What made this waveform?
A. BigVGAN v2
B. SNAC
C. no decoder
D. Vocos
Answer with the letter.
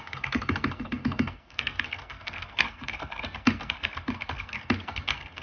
B